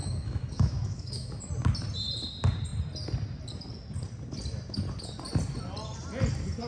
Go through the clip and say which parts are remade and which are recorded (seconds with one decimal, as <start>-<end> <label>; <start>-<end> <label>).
0.0-1.4 remade; 1.4-6.7 recorded